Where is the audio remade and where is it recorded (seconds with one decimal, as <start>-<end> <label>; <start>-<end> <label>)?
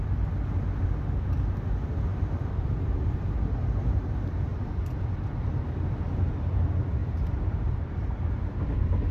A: 0.0-4.5 recorded; 4.5-5.1 remade; 5.1-7.0 recorded; 7.0-7.8 remade; 7.8-9.1 recorded